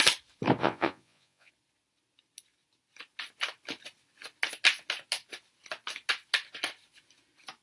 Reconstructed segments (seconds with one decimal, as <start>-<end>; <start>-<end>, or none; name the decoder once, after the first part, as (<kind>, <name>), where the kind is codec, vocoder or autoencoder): 0.6-1.5 (vocoder, Vocos)